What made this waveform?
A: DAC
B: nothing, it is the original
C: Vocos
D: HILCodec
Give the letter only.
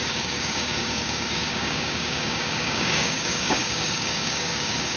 A